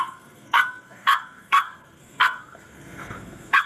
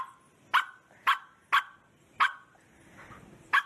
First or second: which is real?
second